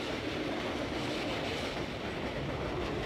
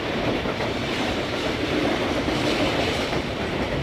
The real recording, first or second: first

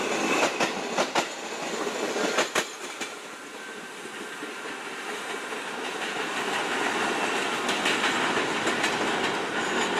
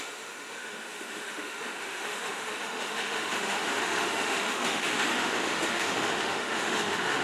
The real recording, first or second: first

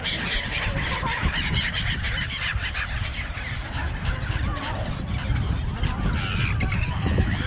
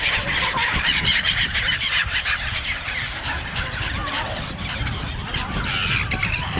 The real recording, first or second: first